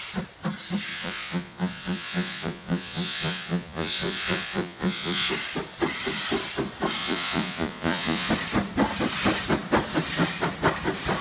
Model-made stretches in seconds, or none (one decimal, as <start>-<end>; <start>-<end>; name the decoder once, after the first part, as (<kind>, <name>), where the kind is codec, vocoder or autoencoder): 0.9-5.3 (vocoder, Vocos); 7.0-8.3